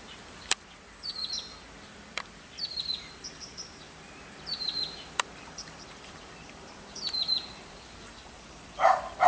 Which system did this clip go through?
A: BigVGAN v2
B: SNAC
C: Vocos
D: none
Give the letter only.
A